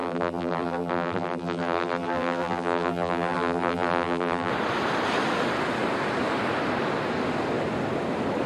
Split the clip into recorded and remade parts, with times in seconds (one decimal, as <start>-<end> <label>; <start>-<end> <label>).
0.0-4.5 remade; 4.5-8.5 recorded